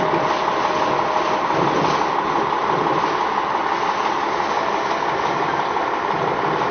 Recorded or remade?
recorded